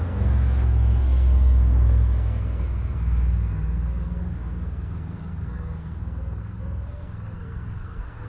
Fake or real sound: fake